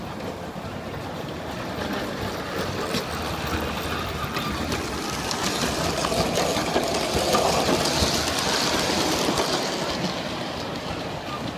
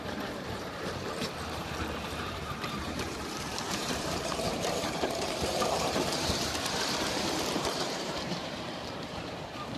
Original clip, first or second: first